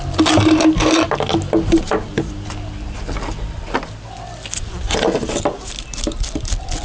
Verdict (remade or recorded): recorded